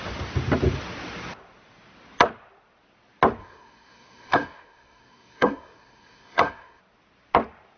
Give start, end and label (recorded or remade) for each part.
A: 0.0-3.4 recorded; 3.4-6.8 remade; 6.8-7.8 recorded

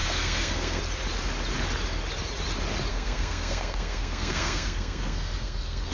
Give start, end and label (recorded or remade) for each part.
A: 0.0-0.8 remade; 0.8-2.9 recorded; 2.9-5.9 remade

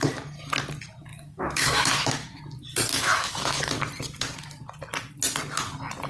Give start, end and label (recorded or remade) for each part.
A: 0.0-1.1 recorded; 1.1-2.4 remade; 2.4-2.9 recorded; 2.9-3.7 remade; 3.7-6.1 recorded

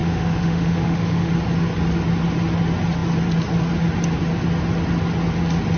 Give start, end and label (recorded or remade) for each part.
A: 0.0-1.3 remade; 1.3-5.8 recorded

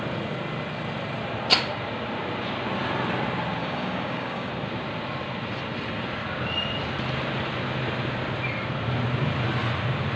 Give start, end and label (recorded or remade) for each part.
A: 0.0-3.6 recorded; 3.6-4.5 remade; 4.5-10.2 recorded

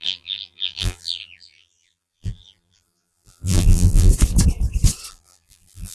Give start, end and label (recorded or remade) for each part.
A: 0.0-4.1 remade; 4.1-5.1 recorded; 5.1-5.9 remade

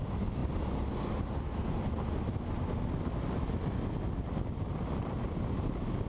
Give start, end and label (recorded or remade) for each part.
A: 0.0-6.1 recorded